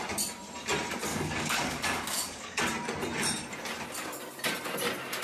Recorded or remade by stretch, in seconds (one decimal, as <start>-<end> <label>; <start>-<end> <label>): 0.0-1.1 recorded; 1.1-2.6 remade; 2.6-5.2 recorded